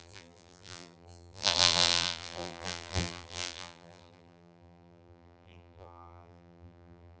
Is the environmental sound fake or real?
fake